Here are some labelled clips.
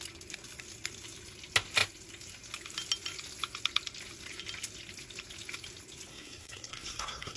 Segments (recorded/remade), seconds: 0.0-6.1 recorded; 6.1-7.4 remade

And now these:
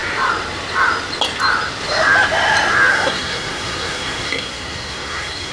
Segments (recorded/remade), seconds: 0.0-2.9 recorded; 2.9-5.5 remade

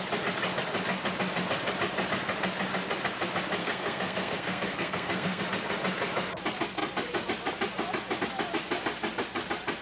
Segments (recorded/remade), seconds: 0.0-3.6 recorded; 3.6-5.4 remade; 5.4-9.8 recorded

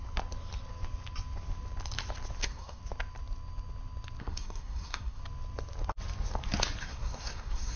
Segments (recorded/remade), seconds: 0.0-2.4 recorded; 2.4-2.8 remade; 2.8-4.2 recorded; 4.2-5.2 remade; 5.2-6.8 recorded; 6.8-7.8 remade

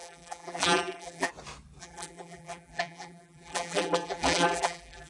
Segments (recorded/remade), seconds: 0.0-1.3 remade; 1.3-1.8 recorded; 1.8-5.1 remade

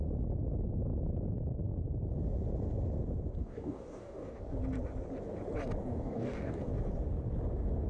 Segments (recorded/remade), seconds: 0.0-3.4 recorded; 3.4-4.4 remade; 4.4-5.8 recorded; 5.8-6.7 remade; 6.7-7.9 recorded